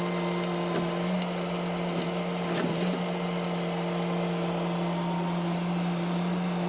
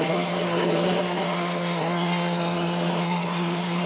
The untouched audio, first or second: first